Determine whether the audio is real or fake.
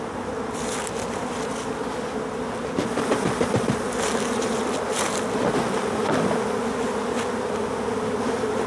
real